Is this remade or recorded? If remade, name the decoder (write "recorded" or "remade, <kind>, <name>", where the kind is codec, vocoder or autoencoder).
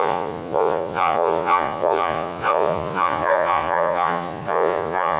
remade, vocoder, Vocos